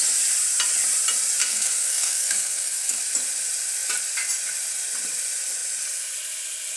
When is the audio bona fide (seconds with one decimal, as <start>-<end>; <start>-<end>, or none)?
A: 0.0-1.4; 3.0-6.8